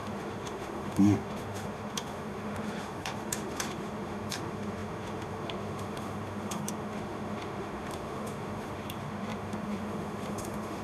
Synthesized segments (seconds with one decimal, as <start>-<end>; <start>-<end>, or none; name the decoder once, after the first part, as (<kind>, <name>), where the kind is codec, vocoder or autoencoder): 0.0-10.8 (autoencoder, DAC-VAE)